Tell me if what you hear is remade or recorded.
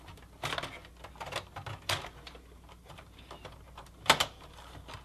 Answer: recorded